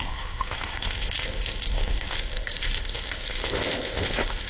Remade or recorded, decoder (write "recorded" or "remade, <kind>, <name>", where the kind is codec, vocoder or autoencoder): remade, codec, ZipCodec